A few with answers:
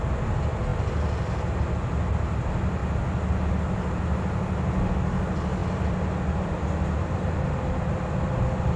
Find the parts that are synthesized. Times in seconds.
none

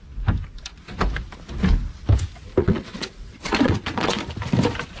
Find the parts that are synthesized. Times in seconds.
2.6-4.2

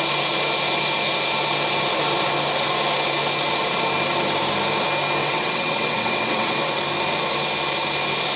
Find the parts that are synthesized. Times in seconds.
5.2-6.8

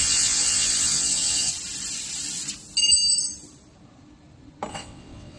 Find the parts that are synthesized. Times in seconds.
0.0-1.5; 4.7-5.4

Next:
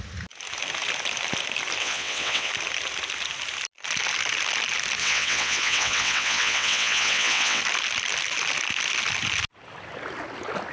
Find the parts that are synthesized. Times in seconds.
1.8-2.5; 5.0-7.6

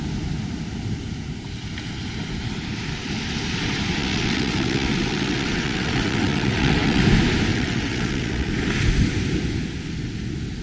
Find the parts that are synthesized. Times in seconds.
4.0-7.0; 7.5-8.5

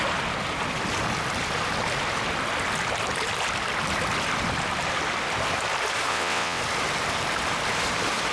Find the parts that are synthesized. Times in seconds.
6.1-6.6

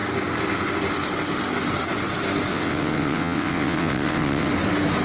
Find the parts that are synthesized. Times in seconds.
2.5-4.5